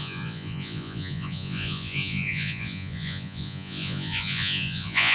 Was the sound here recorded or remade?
remade